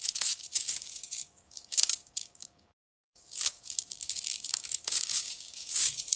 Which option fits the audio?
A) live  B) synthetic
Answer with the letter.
B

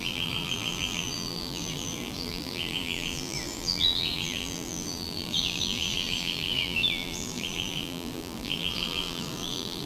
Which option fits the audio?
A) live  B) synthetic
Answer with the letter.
B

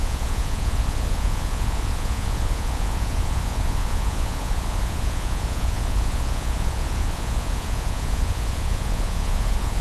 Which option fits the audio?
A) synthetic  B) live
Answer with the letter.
A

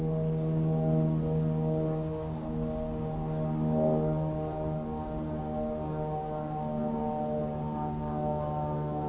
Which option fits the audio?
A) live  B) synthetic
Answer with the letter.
B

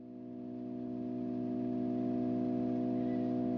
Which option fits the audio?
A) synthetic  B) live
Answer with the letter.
B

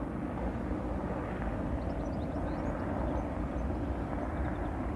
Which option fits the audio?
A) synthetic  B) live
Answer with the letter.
B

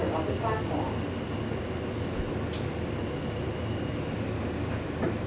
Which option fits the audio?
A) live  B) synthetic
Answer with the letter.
A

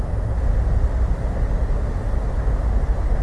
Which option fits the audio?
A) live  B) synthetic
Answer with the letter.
A